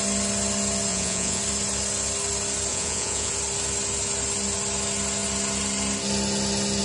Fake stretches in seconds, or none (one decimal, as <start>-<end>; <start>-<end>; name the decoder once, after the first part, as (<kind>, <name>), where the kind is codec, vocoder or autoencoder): 0.9-1.4 (vocoder, Vocos); 2.7-3.3